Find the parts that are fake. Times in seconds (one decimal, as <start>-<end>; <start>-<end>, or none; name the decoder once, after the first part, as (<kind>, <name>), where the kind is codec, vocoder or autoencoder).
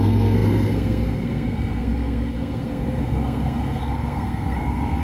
0.0-5.0 (codec, SNAC)